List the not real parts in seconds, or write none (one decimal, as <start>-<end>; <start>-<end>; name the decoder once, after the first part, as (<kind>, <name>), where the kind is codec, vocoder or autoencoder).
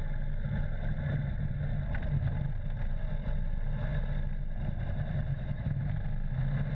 5.3-5.9 (autoencoder, DAC-VAE)